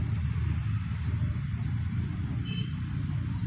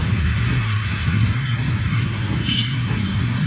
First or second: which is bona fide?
first